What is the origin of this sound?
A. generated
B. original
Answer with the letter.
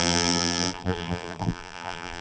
A